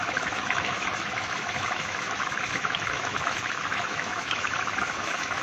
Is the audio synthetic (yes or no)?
yes